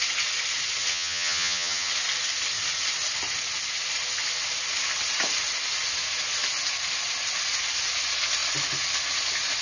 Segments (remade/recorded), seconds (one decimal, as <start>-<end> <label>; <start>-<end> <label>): 0.0-0.9 recorded; 0.9-1.9 remade; 1.9-9.6 recorded